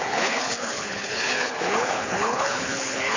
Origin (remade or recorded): remade